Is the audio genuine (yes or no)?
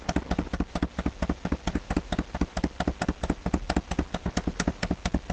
yes